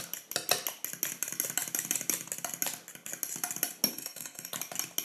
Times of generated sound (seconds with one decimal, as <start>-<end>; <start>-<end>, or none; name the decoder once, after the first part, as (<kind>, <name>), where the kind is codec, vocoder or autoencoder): 3.9-4.5 (codec, SNAC)